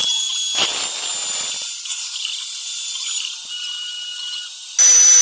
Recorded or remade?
recorded